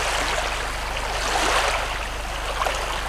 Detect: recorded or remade recorded